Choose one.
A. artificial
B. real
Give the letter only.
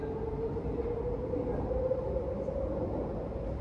B